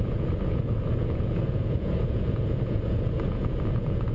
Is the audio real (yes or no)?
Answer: no